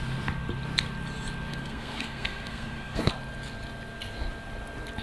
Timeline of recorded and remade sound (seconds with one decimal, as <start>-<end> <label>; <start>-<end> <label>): 0.0-1.5 recorded; 1.5-3.1 remade; 3.1-5.0 recorded